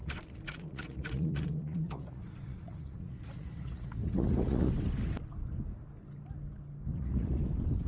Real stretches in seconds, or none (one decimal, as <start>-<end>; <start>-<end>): 4.7-6.9; 7.4-7.9